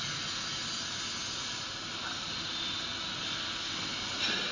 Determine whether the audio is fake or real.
real